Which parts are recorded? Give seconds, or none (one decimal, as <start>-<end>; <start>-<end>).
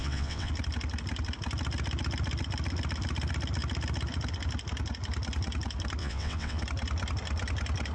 0.5-6.0; 6.6-7.9